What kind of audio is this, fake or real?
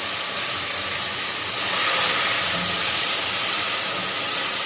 real